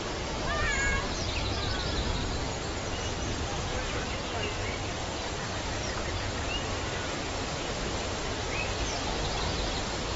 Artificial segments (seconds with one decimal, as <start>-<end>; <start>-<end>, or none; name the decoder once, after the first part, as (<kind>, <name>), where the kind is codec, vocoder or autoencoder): none